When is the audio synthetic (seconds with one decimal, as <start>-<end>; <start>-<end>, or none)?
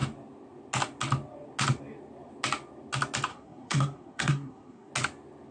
3.3-4.9